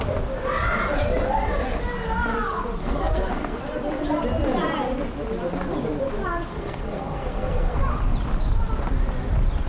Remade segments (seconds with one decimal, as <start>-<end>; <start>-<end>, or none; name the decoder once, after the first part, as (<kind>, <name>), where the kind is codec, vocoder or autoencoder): 2.8-3.6 (codec, SNAC); 6.5-7.8